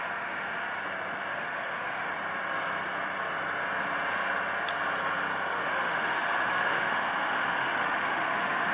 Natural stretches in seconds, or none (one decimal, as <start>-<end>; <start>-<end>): 0.6-1.3; 2.1-5.5